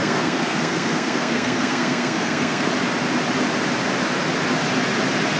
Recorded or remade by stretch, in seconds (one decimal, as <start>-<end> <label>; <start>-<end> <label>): 0.0-2.7 remade; 2.7-5.4 recorded